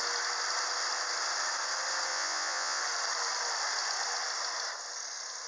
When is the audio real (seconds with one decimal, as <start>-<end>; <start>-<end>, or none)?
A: 0.0-2.1; 2.8-5.5